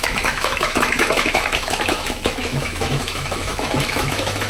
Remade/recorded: remade